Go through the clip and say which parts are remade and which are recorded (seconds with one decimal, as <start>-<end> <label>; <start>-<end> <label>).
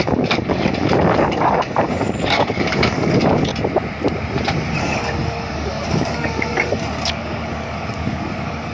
0.0-3.5 remade; 3.5-4.8 recorded; 4.8-8.7 remade